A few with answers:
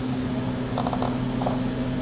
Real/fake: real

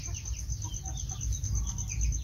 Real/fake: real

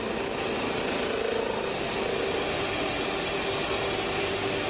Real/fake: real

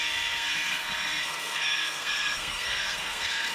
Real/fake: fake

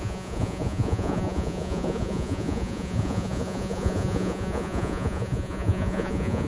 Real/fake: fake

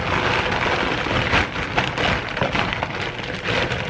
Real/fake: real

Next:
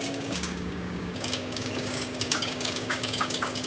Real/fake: fake